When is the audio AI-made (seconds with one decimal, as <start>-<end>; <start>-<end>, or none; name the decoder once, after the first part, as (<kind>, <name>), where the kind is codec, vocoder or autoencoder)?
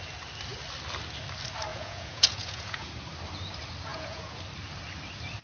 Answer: 1.7-2.9 (vocoder, Vocos); 3.9-4.4